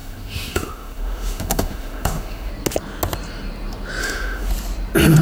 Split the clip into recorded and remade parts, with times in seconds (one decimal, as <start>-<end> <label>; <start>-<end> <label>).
0.0-2.5 remade; 2.5-4.0 recorded; 4.0-4.5 remade; 4.5-5.2 recorded

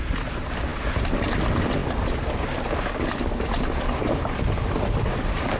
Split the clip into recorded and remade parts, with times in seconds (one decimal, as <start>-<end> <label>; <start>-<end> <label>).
0.0-1.8 recorded; 1.8-5.6 remade

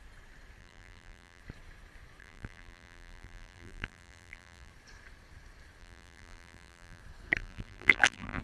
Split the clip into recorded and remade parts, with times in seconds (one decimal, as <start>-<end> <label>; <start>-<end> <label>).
0.0-0.6 recorded; 0.6-1.4 remade; 1.4-2.2 recorded; 2.2-4.7 remade; 4.7-5.8 recorded; 5.8-7.0 remade; 7.0-7.4 recorded; 7.4-8.4 remade